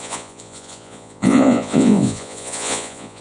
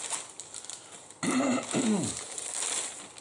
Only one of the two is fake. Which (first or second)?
first